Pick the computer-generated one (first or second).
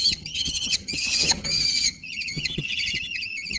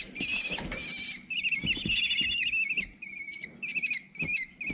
first